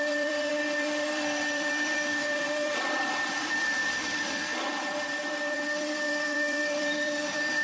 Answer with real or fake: fake